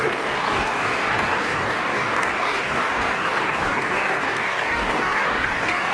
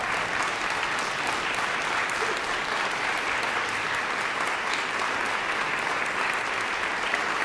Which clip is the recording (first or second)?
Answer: second